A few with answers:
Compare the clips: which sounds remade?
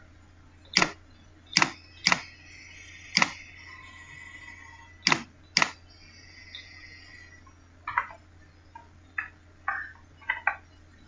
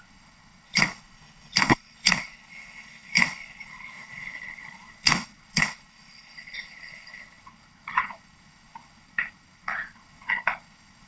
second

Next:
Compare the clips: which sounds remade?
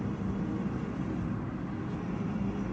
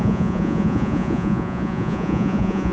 second